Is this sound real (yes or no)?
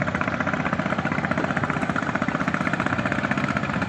yes